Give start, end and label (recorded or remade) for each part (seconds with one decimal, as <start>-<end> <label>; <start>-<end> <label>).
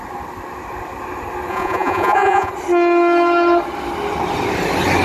0.0-1.5 recorded; 1.5-2.5 remade; 2.5-5.0 recorded